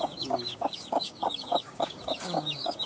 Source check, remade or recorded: remade